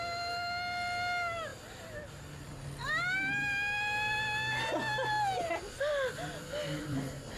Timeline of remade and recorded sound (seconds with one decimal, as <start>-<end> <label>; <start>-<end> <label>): 0.0-7.4 recorded